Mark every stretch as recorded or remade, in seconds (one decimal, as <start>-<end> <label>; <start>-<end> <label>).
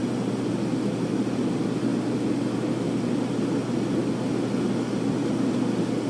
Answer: 0.0-6.1 recorded